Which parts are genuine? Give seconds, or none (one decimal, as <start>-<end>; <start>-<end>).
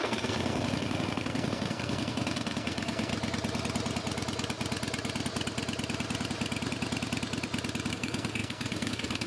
3.1-7.9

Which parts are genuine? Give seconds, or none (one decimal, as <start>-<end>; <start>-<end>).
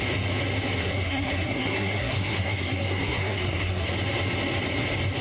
0.0-0.8; 3.9-5.2